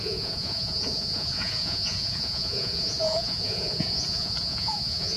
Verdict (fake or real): fake